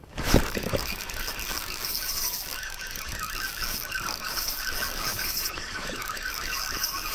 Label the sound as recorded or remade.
remade